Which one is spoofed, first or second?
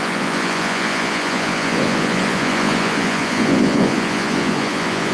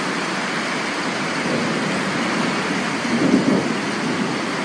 first